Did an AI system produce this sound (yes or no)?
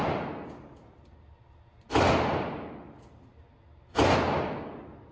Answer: no